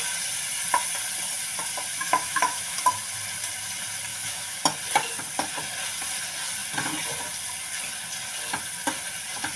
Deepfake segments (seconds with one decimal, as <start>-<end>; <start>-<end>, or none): 1.9-2.8; 4.1-4.6